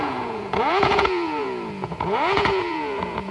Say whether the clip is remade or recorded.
remade